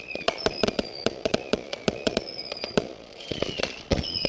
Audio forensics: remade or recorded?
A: remade